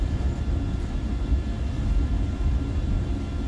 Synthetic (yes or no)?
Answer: yes